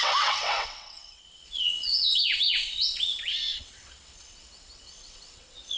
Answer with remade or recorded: remade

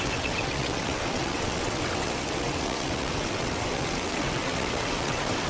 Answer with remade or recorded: remade